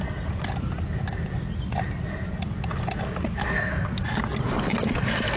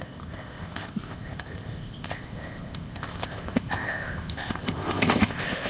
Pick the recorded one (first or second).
first